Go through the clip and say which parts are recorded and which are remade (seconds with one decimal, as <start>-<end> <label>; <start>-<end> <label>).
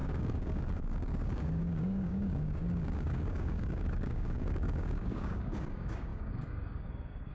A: 0.0-7.3 remade